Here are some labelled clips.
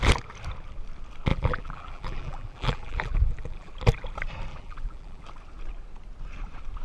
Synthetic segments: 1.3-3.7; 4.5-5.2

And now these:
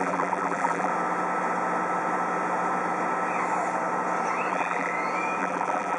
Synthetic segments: 0.0-0.9; 4.5-4.9; 5.4-6.0